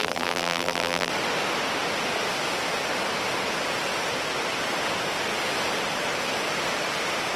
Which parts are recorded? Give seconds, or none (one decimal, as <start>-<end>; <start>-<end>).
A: 1.1-7.4